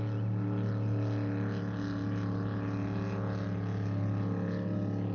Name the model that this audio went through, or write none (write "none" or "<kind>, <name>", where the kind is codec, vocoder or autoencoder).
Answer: none